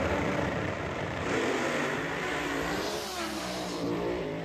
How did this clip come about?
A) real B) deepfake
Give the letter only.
B